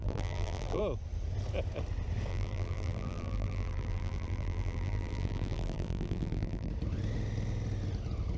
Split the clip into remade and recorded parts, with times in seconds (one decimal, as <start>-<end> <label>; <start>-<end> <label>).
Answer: 0.0-0.8 remade; 0.8-2.3 recorded; 2.3-6.7 remade; 6.7-8.4 recorded